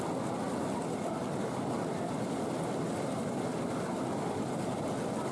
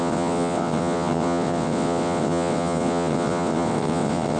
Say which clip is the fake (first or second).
second